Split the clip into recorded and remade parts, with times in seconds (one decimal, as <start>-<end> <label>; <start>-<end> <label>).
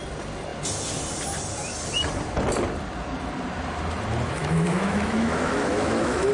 0.0-4.4 recorded; 4.4-6.3 remade